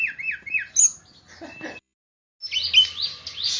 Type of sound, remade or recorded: recorded